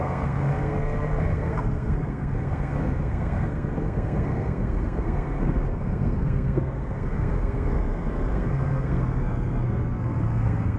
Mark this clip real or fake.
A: fake